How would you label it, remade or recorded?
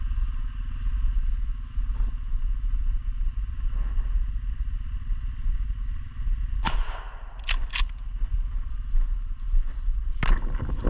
recorded